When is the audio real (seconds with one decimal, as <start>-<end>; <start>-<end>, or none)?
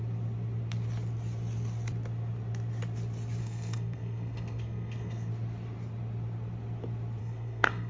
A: 0.0-3.4; 5.3-7.2